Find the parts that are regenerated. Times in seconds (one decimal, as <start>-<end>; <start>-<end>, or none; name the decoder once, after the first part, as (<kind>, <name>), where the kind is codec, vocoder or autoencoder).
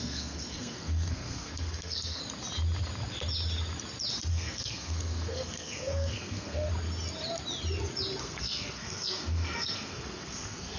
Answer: 0.0-2.2 (codec, SNAC); 4.3-6.7; 8.2-10.8